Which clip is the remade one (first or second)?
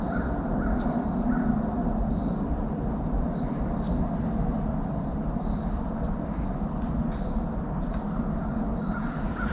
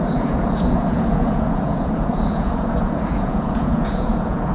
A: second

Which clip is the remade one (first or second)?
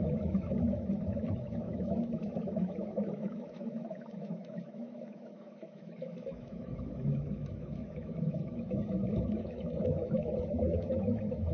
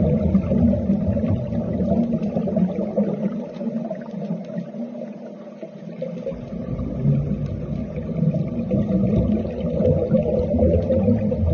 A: first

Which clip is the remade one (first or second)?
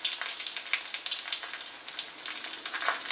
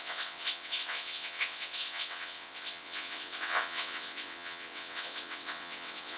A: second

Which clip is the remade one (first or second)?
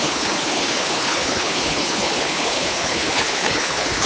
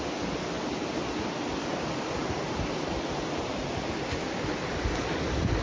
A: first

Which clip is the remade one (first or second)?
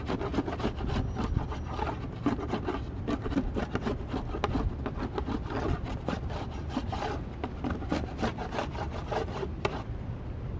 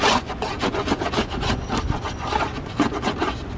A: second